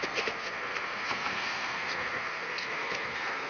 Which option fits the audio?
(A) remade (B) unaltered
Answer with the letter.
A